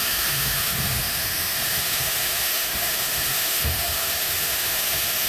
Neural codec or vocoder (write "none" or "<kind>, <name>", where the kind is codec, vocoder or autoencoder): autoencoder, DAC-VAE